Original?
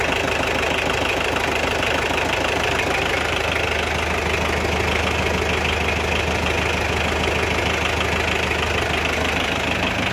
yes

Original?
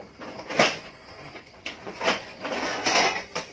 no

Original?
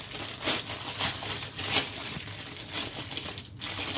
yes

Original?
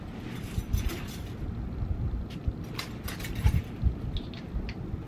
yes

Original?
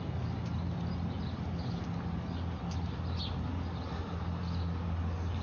yes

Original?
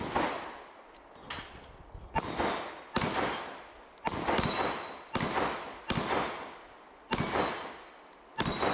yes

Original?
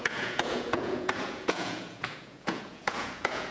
no